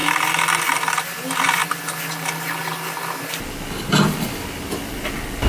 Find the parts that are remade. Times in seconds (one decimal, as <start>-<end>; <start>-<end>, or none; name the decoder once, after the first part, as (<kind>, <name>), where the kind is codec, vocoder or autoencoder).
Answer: none